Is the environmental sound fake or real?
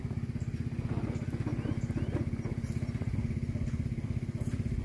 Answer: real